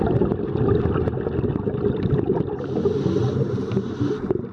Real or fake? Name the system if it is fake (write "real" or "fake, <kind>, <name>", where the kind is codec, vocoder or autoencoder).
real